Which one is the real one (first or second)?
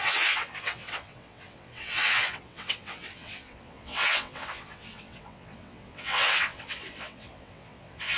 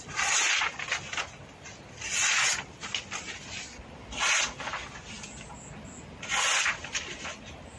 second